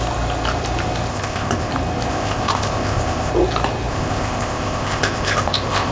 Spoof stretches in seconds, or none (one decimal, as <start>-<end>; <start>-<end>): 1.1-1.7; 2.1-3.3; 3.9-5.9